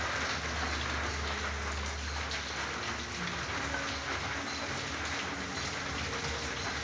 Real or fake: real